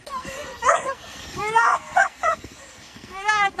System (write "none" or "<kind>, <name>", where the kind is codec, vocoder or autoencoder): codec, SNAC